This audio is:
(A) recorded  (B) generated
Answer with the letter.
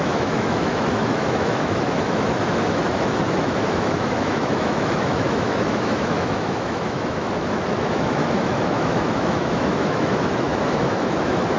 B